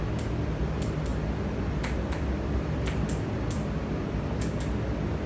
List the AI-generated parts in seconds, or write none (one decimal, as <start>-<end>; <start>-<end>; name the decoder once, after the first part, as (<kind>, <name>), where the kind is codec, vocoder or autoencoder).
none